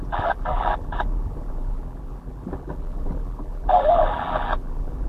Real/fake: fake